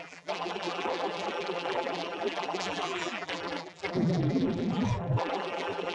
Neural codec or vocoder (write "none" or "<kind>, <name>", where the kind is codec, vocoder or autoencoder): vocoder, BigVGAN v2